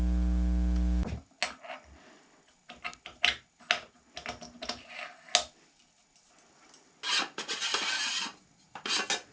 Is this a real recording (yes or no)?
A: yes